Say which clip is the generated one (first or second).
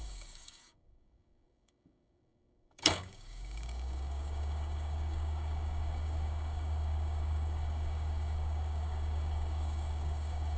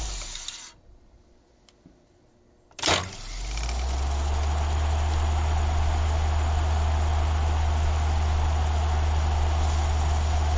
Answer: first